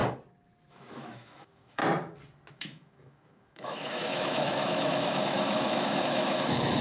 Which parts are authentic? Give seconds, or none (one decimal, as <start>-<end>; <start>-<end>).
0.0-0.7; 1.8-2.5

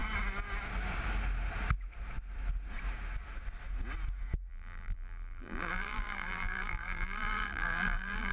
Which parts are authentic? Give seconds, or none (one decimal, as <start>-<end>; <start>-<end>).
0.0-4.5